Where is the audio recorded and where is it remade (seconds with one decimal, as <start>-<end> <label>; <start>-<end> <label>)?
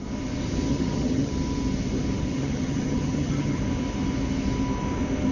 0.0-0.7 recorded; 0.7-1.3 remade; 1.3-2.3 recorded; 2.3-3.6 remade; 3.6-5.3 recorded